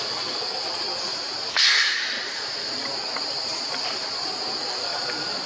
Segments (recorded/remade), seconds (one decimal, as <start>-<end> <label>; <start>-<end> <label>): 0.0-1.5 recorded; 1.5-2.0 remade; 2.0-5.5 recorded